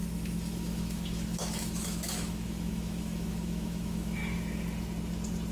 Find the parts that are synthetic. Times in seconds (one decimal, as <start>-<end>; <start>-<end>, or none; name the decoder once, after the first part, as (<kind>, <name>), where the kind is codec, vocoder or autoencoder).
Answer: 0.0-4.2 (autoencoder, DAC-VAE)